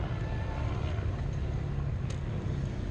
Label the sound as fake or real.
real